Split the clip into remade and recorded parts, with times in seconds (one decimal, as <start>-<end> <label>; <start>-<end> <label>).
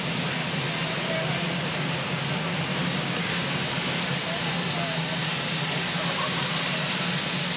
0.0-2.7 recorded; 2.7-3.6 remade; 3.6-7.6 recorded